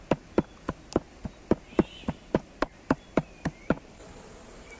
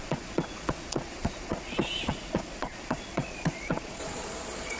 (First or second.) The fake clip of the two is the second